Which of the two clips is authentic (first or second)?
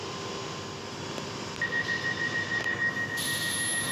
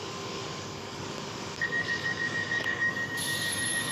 first